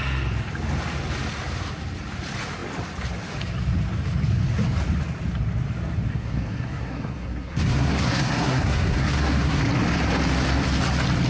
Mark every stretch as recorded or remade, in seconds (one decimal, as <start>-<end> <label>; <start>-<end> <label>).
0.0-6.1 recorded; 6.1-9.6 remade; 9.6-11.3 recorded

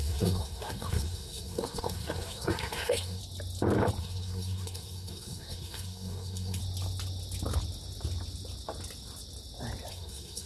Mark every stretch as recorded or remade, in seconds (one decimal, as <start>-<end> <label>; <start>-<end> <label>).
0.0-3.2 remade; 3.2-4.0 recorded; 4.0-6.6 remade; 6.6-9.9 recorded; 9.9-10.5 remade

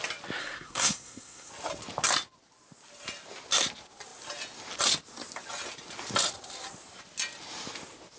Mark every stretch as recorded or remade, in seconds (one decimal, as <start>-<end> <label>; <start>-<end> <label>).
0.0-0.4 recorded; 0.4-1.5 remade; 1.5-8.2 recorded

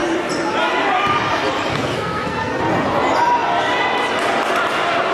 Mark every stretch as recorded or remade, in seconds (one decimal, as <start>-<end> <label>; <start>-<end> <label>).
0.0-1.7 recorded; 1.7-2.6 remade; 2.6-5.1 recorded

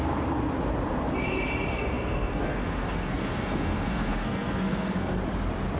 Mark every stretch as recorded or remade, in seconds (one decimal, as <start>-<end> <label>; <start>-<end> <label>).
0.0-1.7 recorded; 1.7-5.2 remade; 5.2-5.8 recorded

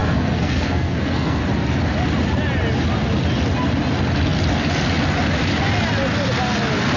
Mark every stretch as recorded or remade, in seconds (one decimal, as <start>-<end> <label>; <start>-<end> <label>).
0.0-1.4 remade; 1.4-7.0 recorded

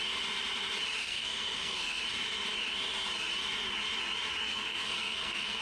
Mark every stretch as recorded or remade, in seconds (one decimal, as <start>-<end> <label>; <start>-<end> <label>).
0.0-1.0 recorded; 1.0-2.0 remade; 2.0-4.4 recorded; 4.4-5.6 remade

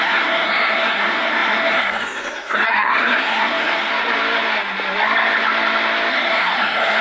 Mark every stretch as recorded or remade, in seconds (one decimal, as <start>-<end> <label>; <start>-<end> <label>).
0.0-3.9 remade; 3.9-6.1 recorded; 6.1-7.0 remade